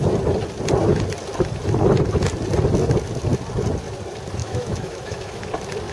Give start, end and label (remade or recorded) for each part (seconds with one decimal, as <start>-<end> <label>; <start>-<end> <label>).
0.0-4.4 recorded; 4.4-5.4 remade; 5.4-5.9 recorded